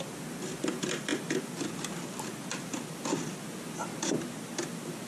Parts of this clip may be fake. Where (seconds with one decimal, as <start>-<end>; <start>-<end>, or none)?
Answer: none